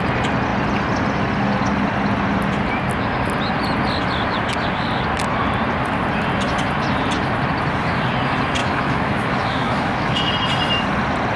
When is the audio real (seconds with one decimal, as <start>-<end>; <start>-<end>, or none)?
0.0-8.6; 10.3-11.4